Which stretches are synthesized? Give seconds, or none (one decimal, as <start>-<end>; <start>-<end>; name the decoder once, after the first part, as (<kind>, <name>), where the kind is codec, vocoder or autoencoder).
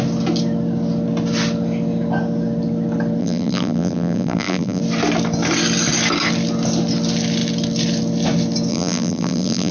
3.2-4.8 (vocoder, BigVGAN v2); 8.7-9.7